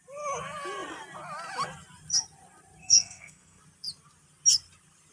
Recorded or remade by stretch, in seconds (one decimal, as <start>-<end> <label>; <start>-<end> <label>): 0.0-2.8 recorded; 2.8-3.6 remade; 3.6-5.1 recorded